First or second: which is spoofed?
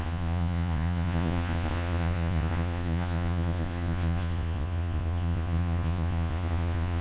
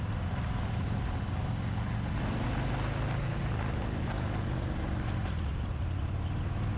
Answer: first